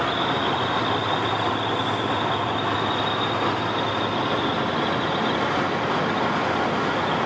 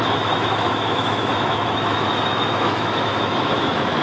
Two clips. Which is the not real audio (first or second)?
second